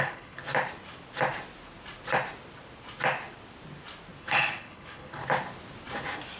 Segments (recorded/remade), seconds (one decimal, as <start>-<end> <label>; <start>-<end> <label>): 0.0-0.4 remade; 0.4-4.2 recorded; 4.2-5.2 remade; 5.2-6.4 recorded